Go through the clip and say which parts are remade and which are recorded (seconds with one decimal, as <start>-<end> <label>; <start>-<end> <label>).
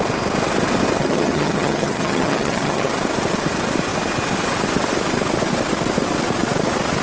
0.0-1.0 recorded; 1.0-2.9 remade; 2.9-7.0 recorded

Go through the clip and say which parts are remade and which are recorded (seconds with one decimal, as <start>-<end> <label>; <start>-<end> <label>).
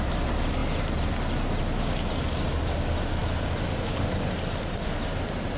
0.0-5.6 recorded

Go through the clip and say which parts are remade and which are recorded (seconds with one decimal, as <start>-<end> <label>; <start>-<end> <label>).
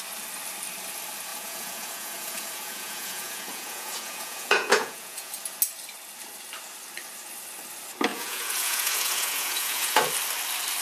0.0-1.3 recorded; 1.3-5.3 remade; 5.3-8.1 recorded; 8.1-10.0 remade; 10.0-10.8 recorded